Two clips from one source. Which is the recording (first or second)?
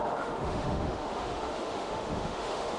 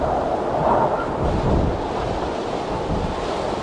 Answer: second